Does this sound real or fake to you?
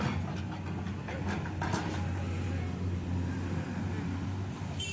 real